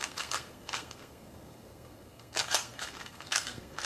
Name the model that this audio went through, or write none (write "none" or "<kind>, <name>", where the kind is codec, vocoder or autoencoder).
codec, SNAC